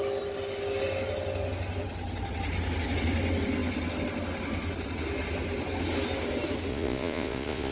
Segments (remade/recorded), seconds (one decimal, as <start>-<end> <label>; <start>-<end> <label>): 0.0-6.7 recorded; 6.7-7.7 remade